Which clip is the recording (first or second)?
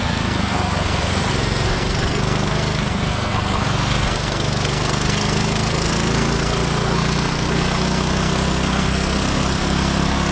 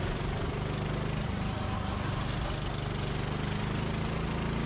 second